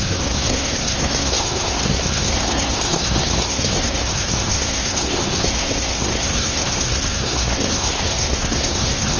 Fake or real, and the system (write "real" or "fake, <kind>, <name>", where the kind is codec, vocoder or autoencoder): fake, codec, SNAC